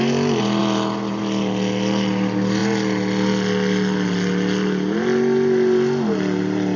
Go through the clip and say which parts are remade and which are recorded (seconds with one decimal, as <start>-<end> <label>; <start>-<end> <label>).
0.0-6.8 recorded